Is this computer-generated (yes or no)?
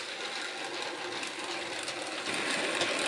no